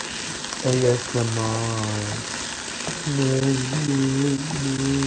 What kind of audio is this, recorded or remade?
recorded